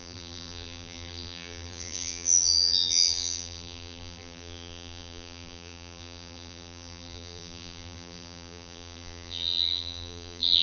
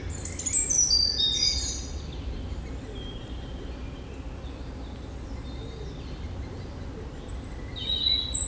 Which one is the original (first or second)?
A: second